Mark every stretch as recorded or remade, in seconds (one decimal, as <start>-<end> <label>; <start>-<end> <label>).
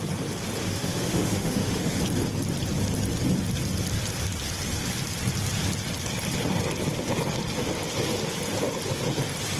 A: 0.0-0.6 recorded; 0.6-2.0 remade; 2.0-9.6 recorded